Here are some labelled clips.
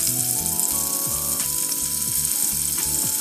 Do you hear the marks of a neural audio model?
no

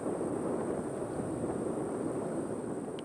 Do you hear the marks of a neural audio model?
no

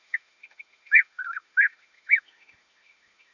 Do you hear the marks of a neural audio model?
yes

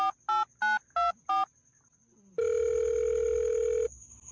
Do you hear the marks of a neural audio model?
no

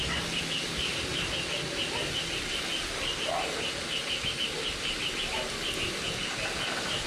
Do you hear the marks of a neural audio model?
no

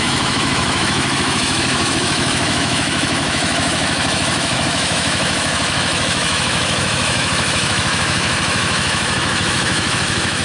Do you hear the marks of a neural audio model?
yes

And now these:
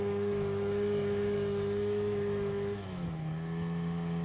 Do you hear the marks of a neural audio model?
yes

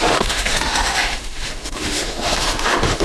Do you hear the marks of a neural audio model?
yes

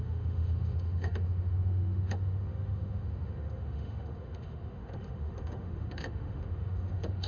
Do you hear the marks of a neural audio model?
yes